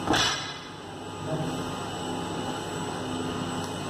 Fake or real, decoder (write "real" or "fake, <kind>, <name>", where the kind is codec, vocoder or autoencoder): real